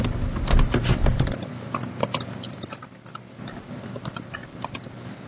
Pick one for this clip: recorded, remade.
recorded